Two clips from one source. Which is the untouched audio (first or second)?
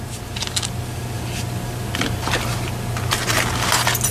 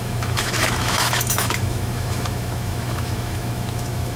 first